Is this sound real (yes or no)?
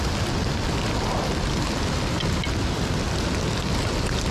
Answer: yes